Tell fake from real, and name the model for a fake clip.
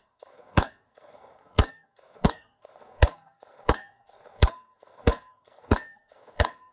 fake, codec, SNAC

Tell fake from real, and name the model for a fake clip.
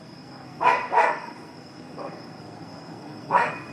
fake, codec, SNAC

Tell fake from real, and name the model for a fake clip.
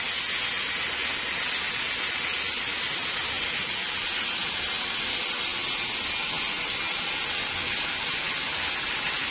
real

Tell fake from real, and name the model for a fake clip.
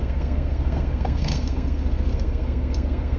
fake, codec, SNAC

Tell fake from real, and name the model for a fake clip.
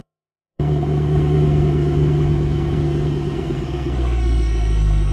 fake, codec, SNAC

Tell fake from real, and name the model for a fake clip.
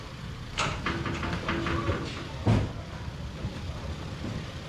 real